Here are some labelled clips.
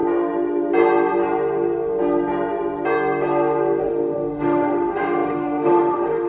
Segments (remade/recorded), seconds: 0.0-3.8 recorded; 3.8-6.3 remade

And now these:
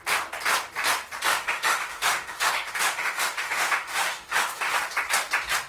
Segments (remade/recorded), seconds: 0.0-1.3 recorded; 1.3-4.7 remade; 4.7-5.7 recorded